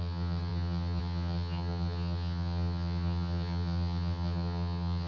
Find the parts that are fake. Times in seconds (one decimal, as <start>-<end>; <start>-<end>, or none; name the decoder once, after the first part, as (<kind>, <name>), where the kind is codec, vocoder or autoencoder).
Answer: 0.0-5.1 (vocoder, HiFi-GAN)